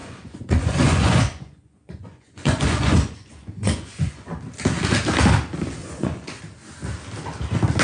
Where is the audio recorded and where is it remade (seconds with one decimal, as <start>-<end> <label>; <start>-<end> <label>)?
0.0-4.3 remade; 4.3-5.8 recorded; 5.8-6.4 remade; 6.4-7.8 recorded